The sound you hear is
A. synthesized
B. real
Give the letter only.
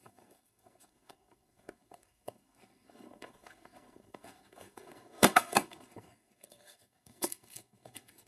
A